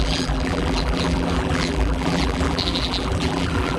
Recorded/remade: remade